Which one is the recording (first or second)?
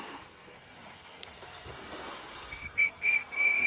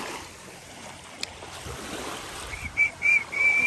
second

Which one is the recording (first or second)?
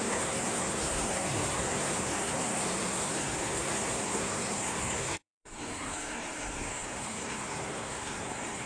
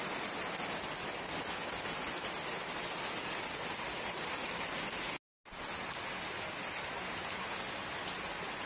second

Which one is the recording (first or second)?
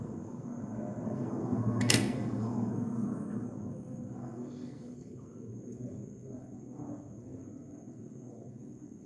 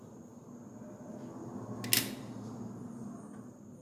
second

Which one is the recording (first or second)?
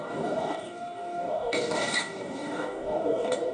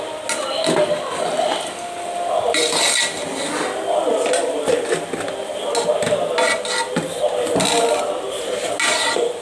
second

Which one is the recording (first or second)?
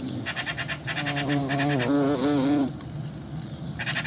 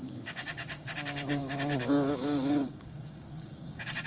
first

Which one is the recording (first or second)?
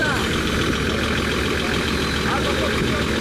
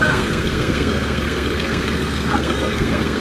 first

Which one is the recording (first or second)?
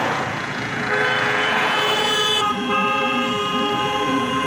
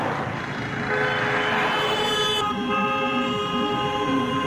second